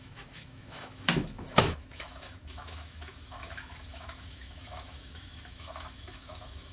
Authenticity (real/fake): fake